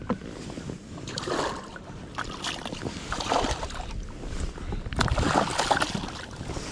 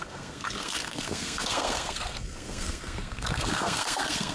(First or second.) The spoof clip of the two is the second